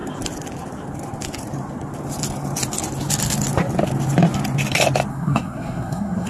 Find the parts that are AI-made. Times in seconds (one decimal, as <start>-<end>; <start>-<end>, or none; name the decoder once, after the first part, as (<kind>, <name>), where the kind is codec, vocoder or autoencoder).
5.1-6.3 (codec, SNAC)

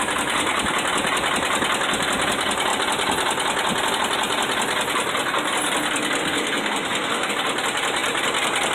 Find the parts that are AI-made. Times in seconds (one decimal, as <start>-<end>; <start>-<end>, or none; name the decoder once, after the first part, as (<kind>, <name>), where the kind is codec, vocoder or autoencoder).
6.2-7.3 (codec, SNAC)

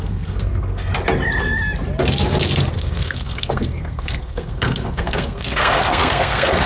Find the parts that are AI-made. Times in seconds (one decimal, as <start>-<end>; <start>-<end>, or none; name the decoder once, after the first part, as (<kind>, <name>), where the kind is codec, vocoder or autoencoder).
0.0-0.9 (codec, SNAC); 2.7-6.7

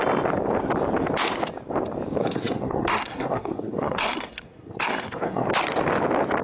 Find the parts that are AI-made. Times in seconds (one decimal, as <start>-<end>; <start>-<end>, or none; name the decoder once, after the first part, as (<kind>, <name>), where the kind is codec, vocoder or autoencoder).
2.2-5.5 (codec, SNAC)

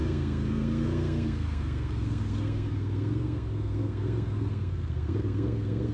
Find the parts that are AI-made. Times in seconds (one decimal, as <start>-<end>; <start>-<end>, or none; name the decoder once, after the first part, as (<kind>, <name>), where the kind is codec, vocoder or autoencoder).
0.0-5.9 (codec, SNAC)

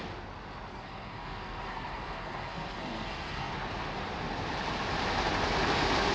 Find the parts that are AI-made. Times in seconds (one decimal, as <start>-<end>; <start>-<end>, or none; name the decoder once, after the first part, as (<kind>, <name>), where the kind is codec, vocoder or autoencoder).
0.7-3.5 (codec, SNAC)

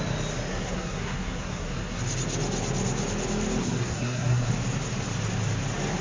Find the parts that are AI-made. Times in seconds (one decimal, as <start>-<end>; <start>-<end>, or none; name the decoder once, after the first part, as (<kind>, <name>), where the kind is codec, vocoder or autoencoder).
0.5-2.0 (codec, SNAC); 3.6-4.5